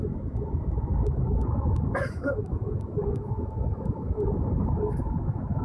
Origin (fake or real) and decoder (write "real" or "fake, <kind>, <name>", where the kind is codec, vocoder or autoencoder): fake, autoencoder, DAC-VAE